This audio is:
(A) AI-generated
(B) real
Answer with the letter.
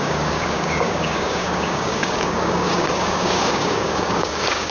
A